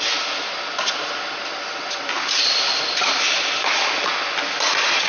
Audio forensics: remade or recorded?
recorded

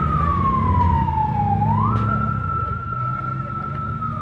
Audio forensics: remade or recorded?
recorded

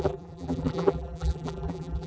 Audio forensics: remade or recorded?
remade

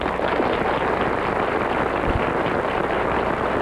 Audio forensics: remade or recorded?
recorded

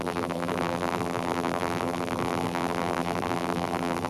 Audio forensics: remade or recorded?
remade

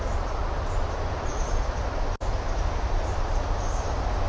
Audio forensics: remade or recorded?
recorded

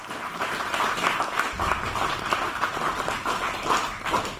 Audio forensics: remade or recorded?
recorded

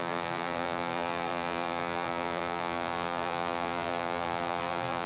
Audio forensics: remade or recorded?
remade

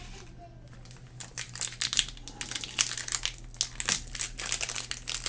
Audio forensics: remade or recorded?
recorded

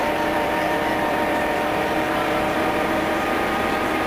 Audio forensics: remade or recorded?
remade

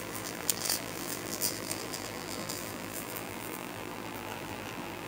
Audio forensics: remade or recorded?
remade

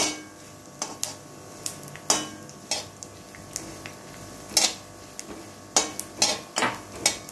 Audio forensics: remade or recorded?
recorded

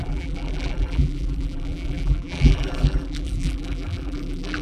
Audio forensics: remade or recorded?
remade